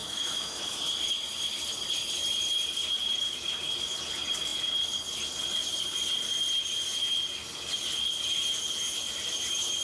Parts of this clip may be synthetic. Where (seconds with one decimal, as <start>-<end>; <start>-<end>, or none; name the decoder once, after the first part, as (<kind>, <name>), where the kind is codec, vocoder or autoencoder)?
0.0-0.8 (autoencoder, DAC-VAE)